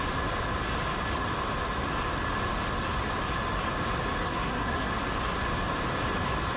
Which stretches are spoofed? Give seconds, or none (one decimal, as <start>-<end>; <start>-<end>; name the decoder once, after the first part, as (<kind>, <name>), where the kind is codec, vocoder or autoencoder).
4.2-4.9 (codec, SNAC)